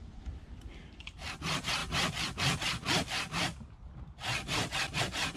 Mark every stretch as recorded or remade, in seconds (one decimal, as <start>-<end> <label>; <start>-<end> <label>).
0.0-5.4 recorded